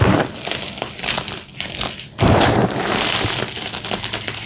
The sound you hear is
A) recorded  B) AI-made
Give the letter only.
A